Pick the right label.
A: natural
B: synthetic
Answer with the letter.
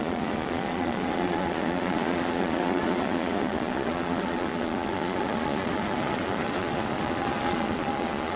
B